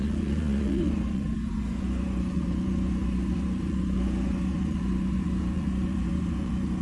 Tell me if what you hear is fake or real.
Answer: fake